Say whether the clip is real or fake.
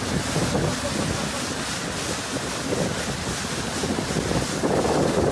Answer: real